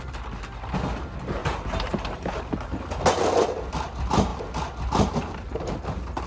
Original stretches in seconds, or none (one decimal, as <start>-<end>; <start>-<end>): 0.0-1.4; 2.4-6.3